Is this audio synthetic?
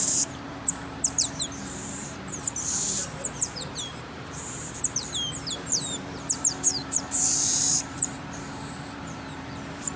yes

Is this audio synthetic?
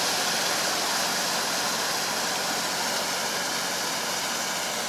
no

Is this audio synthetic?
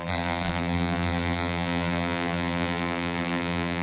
yes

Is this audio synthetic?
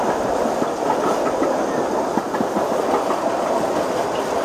no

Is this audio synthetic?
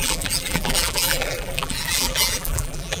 yes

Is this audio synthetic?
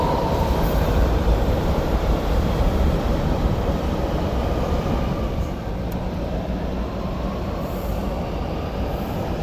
yes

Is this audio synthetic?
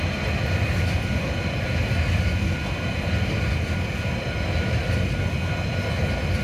no